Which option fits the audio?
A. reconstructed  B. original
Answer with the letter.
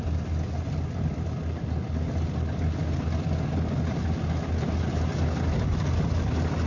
B